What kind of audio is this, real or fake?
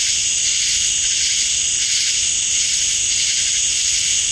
real